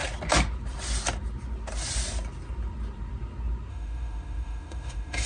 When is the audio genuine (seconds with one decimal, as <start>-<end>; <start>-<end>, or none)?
0.0-3.7